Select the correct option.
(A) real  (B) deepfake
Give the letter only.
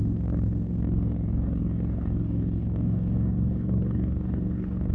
B